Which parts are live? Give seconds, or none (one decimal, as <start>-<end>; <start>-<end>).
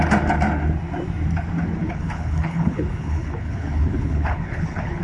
0.0-1.8